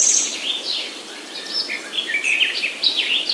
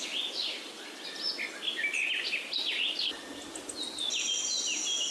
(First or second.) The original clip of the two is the second